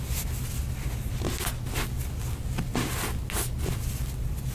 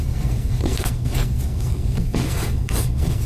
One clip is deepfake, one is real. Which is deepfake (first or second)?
second